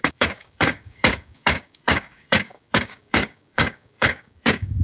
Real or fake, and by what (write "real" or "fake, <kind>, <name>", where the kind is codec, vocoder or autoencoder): fake, codec, DAC